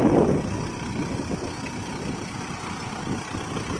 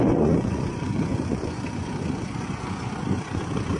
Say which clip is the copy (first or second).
second